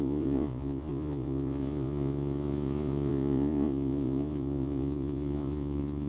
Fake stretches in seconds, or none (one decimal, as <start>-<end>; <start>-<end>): 0.0-6.1